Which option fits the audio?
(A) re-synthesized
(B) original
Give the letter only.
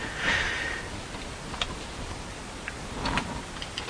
B